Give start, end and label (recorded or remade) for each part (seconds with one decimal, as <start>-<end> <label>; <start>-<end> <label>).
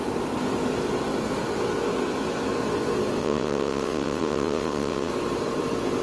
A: 0.0-3.2 recorded; 3.2-5.1 remade; 5.1-6.0 recorded